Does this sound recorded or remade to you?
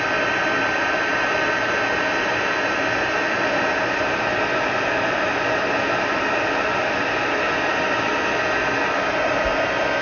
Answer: remade